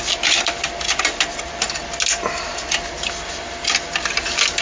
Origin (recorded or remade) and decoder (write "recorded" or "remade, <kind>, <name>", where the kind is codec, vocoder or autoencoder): recorded